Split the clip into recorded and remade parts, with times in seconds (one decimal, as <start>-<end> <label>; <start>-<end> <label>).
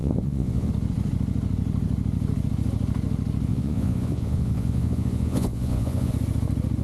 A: 0.0-0.7 remade; 0.7-3.5 recorded; 3.5-6.1 remade; 6.1-6.8 recorded